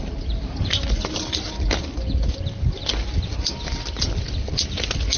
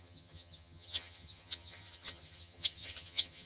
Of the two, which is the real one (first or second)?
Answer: first